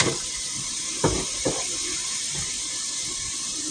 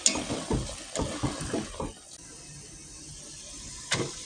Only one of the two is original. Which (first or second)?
second